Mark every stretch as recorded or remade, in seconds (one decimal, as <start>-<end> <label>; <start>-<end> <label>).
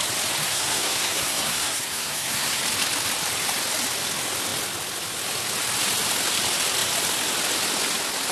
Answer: 0.0-0.4 recorded; 0.4-2.6 remade; 2.6-8.3 recorded